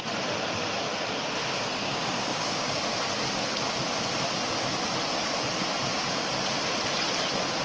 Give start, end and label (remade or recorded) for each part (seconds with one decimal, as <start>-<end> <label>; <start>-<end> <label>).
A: 0.0-1.8 recorded; 1.8-2.8 remade; 2.8-7.6 recorded